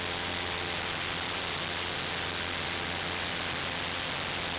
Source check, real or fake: real